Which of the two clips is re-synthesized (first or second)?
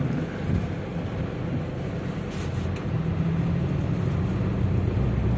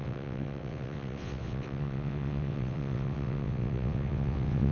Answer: second